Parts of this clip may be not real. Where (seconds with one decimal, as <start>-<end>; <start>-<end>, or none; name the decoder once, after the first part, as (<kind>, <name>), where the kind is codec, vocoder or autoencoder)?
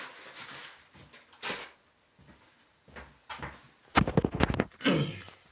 none